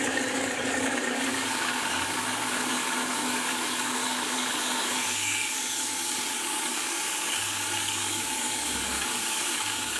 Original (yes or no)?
no